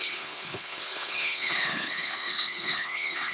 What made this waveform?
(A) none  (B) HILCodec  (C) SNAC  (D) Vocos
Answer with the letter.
B